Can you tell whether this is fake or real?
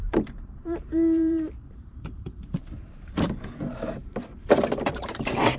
fake